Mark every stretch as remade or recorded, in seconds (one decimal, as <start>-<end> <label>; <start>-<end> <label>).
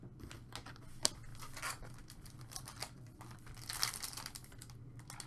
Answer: 0.0-1.3 recorded; 1.3-3.9 remade; 3.9-5.3 recorded